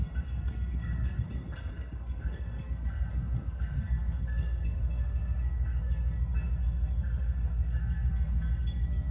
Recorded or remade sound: remade